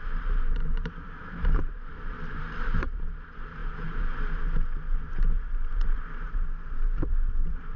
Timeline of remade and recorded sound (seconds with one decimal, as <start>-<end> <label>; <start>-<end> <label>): 0.0-7.8 remade